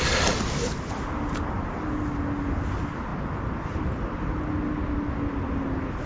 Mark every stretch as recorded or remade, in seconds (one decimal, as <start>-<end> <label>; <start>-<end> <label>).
0.0-6.1 recorded